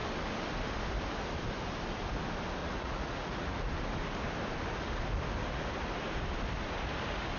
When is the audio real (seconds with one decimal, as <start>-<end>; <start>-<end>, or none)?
0.0-2.6; 3.7-7.4